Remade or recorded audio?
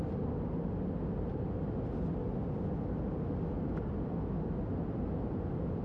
recorded